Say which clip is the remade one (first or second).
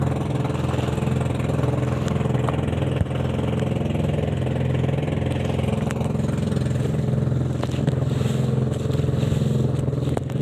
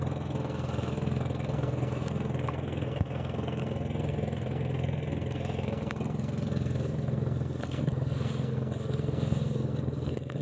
second